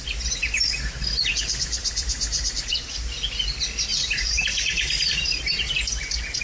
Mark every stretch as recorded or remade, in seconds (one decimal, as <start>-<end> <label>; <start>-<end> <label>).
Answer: 0.0-1.8 recorded; 1.8-2.5 remade; 2.5-3.9 recorded; 3.9-5.7 remade; 5.7-6.4 recorded